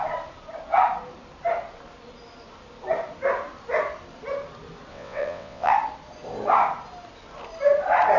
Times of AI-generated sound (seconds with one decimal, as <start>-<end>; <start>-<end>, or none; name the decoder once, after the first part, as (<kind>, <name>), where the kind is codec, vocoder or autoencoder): 4.9-5.7 (vocoder, WaveNeXt)